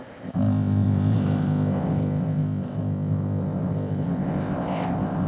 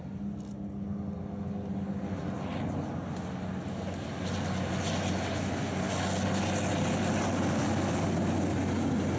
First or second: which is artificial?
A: first